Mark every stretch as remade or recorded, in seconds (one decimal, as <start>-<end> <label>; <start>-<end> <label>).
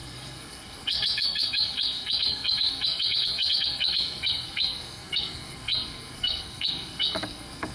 0.0-7.7 remade